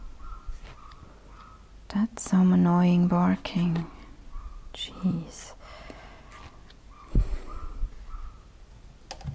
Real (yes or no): yes